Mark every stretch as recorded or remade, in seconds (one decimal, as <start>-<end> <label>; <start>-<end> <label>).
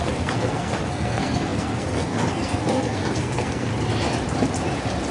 0.0-3.7 remade; 3.7-5.1 recorded